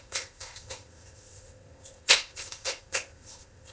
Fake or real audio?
fake